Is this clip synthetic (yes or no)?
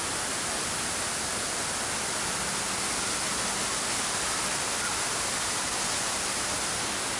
no